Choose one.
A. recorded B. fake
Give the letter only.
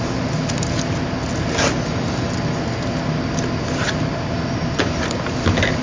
A